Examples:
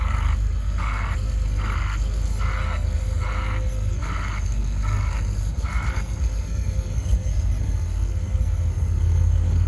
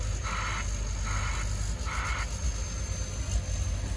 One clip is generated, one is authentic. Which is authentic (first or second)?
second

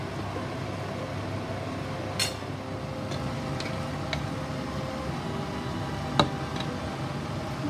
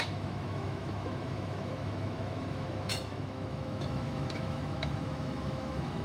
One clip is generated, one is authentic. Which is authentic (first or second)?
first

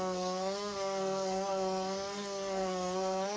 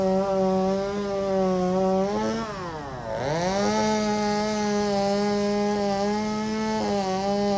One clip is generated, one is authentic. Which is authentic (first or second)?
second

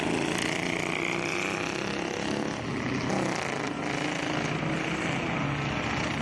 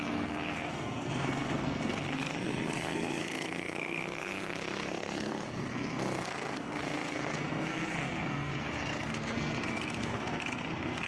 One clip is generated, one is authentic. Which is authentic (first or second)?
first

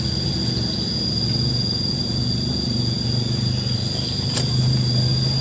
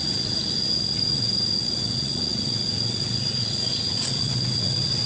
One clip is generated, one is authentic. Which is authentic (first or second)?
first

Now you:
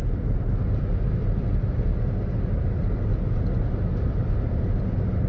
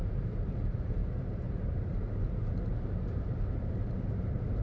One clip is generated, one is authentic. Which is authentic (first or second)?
first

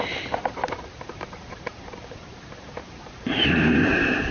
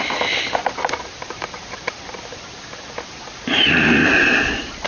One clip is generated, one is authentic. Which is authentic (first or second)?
second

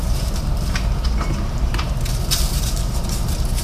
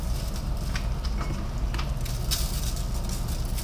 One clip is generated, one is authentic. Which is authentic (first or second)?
second